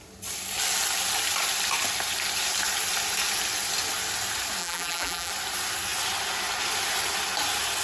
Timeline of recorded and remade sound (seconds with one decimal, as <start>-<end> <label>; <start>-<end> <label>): 0.0-4.6 recorded; 4.6-5.3 remade; 5.3-7.8 recorded